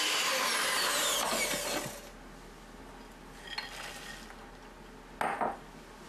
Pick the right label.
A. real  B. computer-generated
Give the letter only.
A